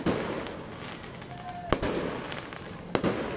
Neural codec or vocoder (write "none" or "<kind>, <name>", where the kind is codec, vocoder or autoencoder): none